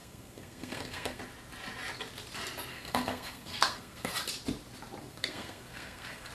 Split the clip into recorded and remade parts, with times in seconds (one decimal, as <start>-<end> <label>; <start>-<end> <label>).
0.0-1.2 remade; 1.2-2.7 recorded; 2.7-4.1 remade; 4.1-5.0 recorded; 5.0-6.3 remade